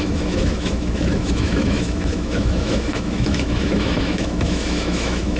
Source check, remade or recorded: remade